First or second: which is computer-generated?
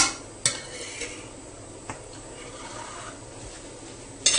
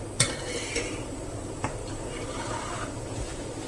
second